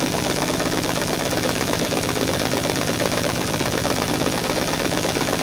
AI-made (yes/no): yes